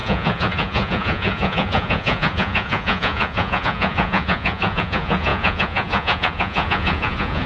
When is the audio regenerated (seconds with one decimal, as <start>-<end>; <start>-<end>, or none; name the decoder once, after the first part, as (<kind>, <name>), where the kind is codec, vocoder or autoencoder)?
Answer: 0.0-7.5 (vocoder, Vocos)